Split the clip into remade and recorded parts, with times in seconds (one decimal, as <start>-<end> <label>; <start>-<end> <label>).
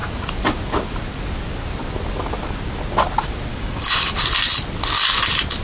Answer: 0.0-3.5 recorded; 3.5-4.1 remade; 4.1-5.6 recorded